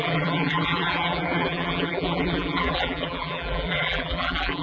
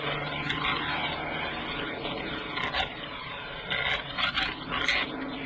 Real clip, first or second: second